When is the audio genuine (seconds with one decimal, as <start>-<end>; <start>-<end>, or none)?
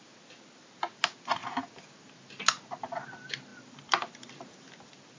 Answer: 0.0-1.4; 2.1-3.5; 4.3-5.2